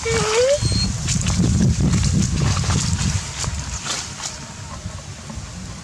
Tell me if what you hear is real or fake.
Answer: real